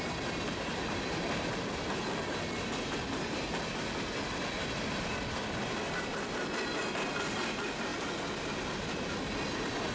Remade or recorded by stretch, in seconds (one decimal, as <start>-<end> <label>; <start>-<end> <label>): 0.0-9.9 recorded